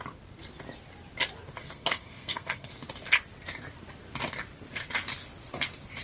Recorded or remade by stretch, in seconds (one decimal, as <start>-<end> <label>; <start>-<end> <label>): 0.0-1.6 recorded; 1.6-2.7 remade; 2.7-6.0 recorded